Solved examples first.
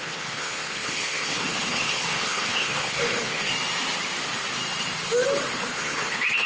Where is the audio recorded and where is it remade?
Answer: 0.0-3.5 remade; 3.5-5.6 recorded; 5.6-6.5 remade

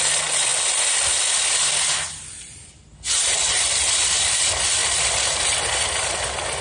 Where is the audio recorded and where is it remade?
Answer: 0.0-6.6 recorded